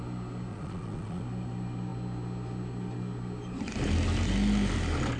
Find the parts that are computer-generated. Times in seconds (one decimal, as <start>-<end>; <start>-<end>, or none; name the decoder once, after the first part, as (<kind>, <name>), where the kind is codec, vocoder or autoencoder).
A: 0.5-1.2 (vocoder, Vocos)